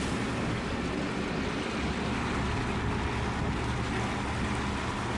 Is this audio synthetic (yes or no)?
no